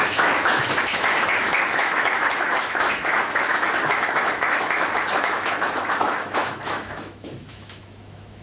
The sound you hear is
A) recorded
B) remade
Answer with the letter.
B